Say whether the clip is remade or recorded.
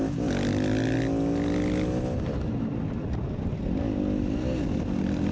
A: recorded